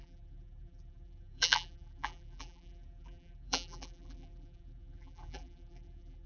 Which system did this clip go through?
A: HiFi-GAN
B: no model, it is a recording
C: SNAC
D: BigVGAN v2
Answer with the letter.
D